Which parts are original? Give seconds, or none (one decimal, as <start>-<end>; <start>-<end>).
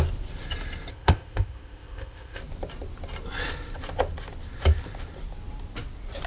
0.0-0.9; 2.4-6.3